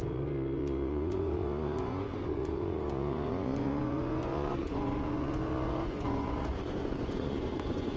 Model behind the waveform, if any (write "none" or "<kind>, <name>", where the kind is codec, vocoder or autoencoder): vocoder, Vocos